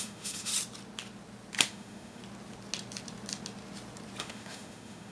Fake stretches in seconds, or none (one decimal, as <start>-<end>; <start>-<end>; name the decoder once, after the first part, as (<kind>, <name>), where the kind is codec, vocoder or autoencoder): 0.0-0.5 (autoencoder, DAC-VAE); 1.7-2.2; 4.2-5.1